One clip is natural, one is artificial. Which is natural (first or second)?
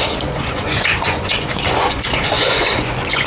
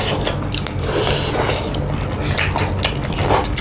second